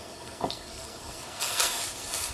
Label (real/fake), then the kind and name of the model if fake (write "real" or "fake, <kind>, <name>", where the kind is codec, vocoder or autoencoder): fake, codec, SNAC